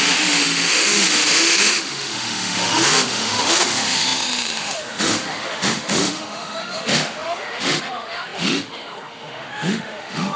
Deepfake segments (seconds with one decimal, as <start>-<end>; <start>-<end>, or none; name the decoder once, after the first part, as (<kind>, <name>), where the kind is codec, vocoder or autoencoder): 0.0-10.4 (autoencoder, DAC-VAE)